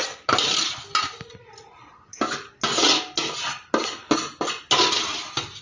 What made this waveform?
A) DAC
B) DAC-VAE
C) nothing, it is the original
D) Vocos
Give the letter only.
C